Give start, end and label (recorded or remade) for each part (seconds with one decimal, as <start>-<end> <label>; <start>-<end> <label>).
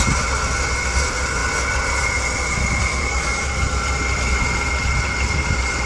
0.0-2.9 recorded; 2.9-3.5 remade; 3.5-5.9 recorded